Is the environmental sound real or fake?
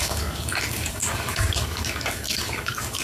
fake